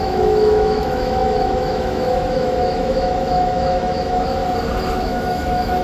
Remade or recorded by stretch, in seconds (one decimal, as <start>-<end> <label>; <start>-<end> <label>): 0.0-4.4 remade; 4.4-4.9 recorded; 4.9-5.8 remade